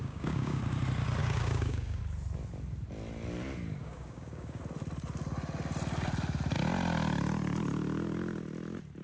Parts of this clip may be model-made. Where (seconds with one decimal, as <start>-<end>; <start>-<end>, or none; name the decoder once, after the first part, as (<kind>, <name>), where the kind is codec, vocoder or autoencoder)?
0.0-0.6 (codec, DAC); 1.2-2.0; 3.8-4.6